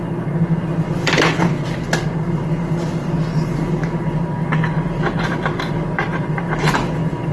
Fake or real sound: real